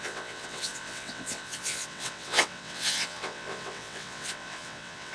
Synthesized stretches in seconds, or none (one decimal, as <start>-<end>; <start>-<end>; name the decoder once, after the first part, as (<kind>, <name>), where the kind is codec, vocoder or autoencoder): 0.0-5.1 (vocoder, WaveNeXt)